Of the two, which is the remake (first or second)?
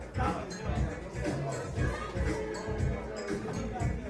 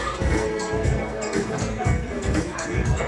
second